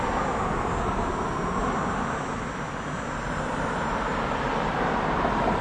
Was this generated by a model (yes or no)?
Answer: no